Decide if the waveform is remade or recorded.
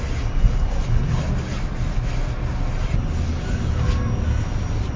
recorded